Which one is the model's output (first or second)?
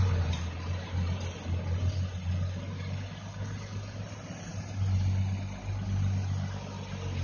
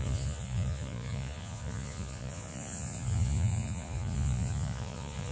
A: second